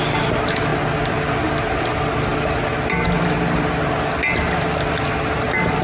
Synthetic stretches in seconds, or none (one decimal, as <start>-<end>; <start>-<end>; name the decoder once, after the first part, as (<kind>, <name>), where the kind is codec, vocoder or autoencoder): none